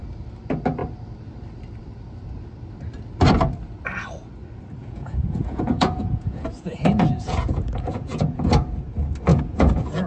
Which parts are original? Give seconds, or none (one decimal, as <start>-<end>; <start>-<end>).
0.0-4.8; 8.5-9.3